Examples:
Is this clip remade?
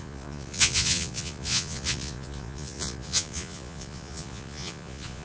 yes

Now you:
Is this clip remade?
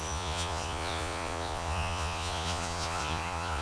yes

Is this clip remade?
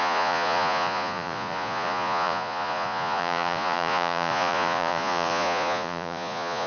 yes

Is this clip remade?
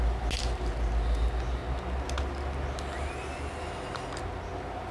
no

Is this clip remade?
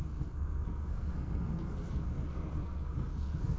yes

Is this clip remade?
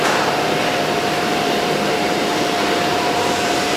yes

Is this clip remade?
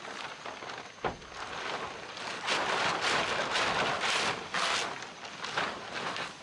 no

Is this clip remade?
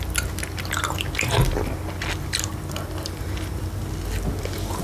no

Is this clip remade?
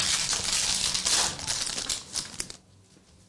no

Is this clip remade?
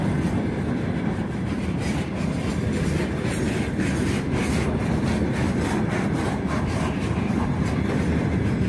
no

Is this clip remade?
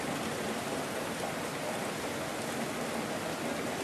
no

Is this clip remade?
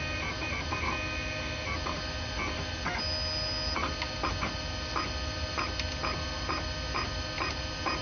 no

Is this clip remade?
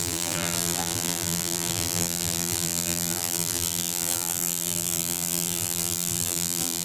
yes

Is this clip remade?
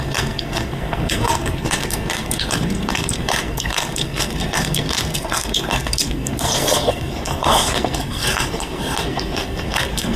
yes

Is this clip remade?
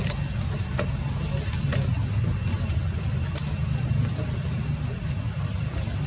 no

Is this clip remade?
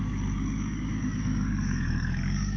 yes